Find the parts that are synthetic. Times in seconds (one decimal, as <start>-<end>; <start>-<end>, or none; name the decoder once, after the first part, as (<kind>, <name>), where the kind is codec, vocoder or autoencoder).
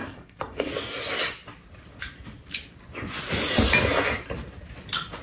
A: 0.0-0.7 (codec, SNAC)